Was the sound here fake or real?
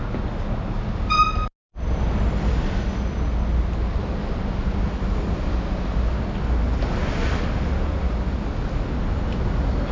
real